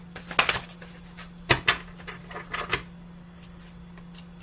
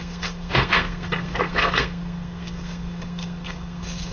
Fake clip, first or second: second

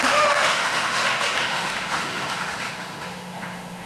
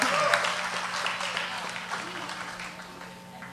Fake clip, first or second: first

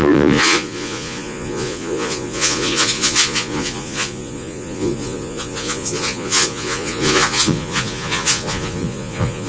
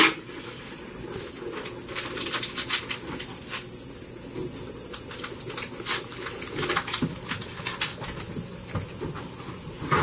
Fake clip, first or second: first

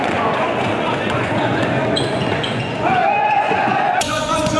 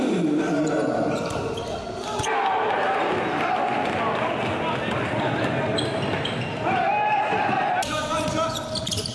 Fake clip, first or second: first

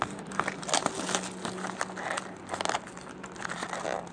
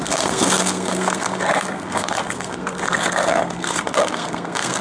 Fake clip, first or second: second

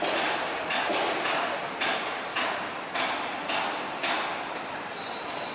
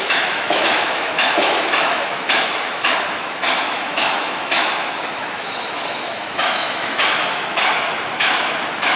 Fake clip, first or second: second